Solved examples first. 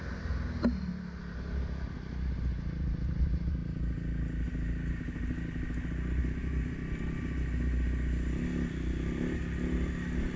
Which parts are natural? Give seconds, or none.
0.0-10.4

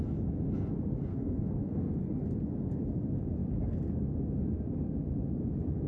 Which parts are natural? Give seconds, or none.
0.0-1.1; 1.9-5.9

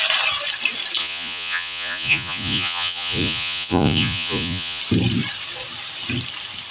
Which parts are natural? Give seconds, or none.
0.0-1.0; 4.8-6.7

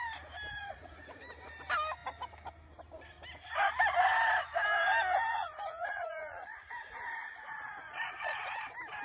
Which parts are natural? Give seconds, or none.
0.0-0.5; 1.2-5.3; 8.6-9.0

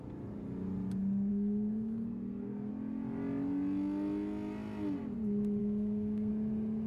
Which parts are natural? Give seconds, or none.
0.0-1.3; 2.7-5.6; 6.3-6.9

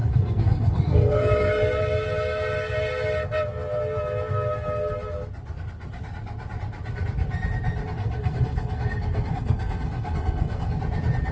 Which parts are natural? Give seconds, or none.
1.8-8.0; 10.8-11.3